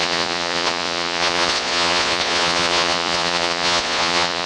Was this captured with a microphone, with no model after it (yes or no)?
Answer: no